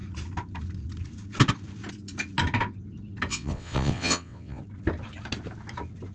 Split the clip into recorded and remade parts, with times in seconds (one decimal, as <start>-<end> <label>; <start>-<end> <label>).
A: 0.0-3.3 recorded; 3.3-4.6 remade; 4.6-6.1 recorded